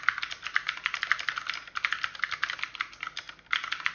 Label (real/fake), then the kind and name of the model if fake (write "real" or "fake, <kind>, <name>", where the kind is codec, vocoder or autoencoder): real